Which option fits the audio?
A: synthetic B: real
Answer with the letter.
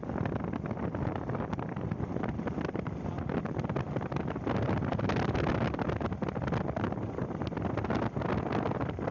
B